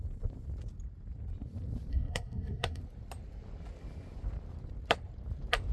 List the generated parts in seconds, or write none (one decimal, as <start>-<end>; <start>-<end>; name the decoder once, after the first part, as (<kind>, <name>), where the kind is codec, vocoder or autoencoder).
1.9-2.8 (codec, SNAC)